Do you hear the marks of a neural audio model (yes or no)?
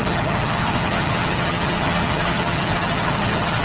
yes